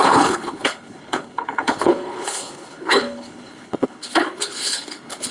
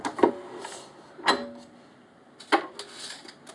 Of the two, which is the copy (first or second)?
first